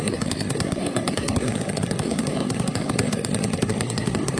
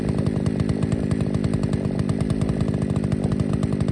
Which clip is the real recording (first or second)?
second